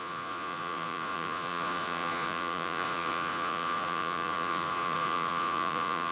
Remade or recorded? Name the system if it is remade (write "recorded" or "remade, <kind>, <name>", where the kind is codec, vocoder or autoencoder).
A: remade, vocoder, Vocos